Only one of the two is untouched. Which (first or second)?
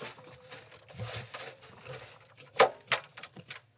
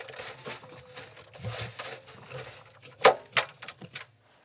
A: second